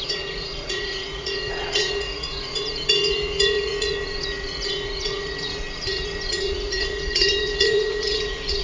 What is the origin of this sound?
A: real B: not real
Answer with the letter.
B